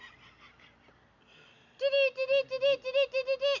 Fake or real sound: real